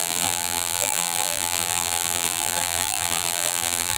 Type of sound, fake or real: fake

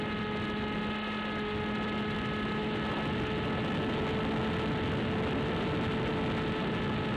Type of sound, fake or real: real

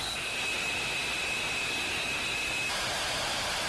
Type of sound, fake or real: real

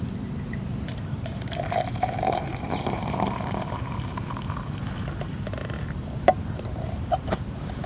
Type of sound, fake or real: fake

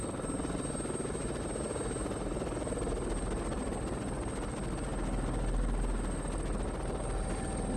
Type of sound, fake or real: real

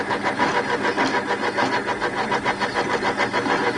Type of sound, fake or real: real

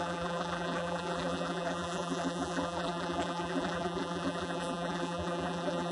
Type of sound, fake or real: fake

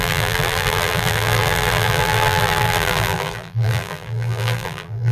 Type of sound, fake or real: fake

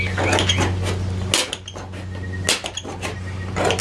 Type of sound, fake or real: real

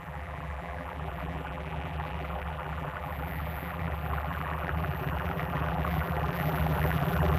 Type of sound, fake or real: fake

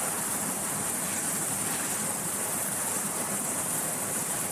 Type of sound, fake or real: fake